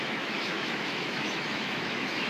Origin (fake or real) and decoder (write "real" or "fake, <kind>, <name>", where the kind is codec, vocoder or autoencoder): fake, autoencoder, DAC-VAE